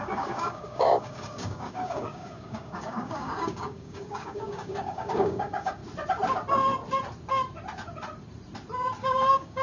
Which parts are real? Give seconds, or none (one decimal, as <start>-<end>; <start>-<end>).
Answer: 5.8-9.0